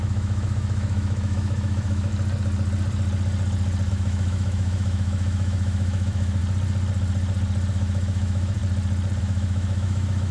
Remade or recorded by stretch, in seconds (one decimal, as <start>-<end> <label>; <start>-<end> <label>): 0.0-2.1 remade; 2.1-3.9 recorded; 3.9-6.4 remade; 6.4-7.7 recorded; 7.7-8.6 remade; 8.6-9.2 recorded; 9.2-10.3 remade